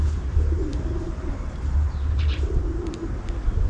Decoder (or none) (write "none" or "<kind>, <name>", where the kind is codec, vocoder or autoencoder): vocoder, BigVGAN v2